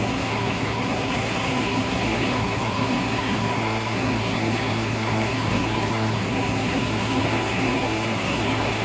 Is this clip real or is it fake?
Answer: fake